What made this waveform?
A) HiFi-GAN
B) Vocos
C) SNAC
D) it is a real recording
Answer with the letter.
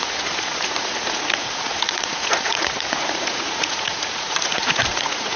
B